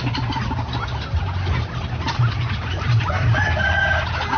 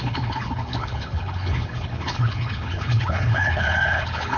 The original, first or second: first